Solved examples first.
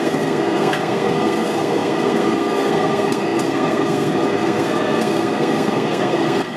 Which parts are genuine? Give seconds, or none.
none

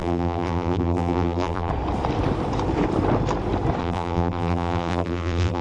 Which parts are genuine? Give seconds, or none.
1.7-3.8

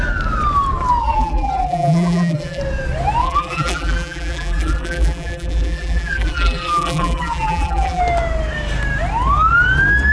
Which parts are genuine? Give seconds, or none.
0.0-1.0; 2.6-3.2; 8.0-10.1

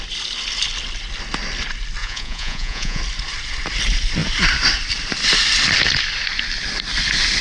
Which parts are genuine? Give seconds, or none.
0.0-2.0; 3.0-7.4

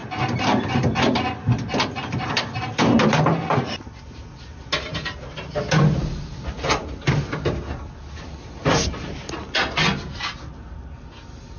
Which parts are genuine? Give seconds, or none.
0.0-11.6

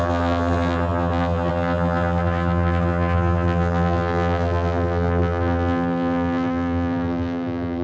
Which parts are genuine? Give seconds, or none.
none